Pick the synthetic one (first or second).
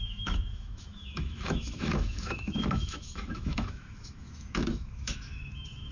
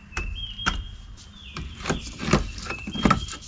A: first